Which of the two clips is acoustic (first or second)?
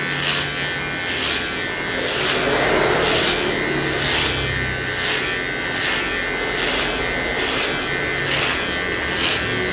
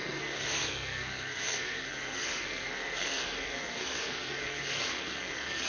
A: first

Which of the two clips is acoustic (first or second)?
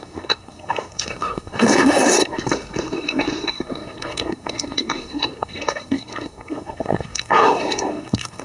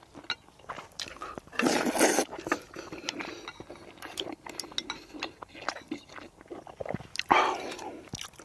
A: second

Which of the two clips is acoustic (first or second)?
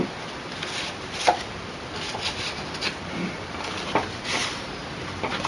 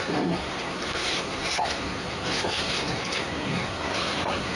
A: first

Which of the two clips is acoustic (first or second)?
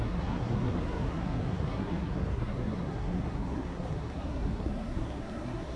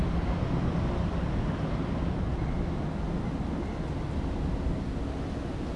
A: second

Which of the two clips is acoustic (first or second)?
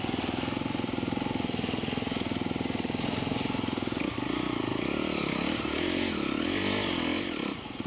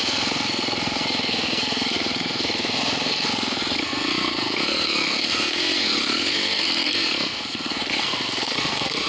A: first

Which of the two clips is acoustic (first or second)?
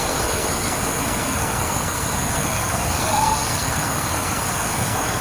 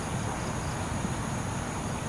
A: second